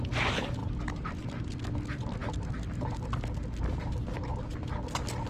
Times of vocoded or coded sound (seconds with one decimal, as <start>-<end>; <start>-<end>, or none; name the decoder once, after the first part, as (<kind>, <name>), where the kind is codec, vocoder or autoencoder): none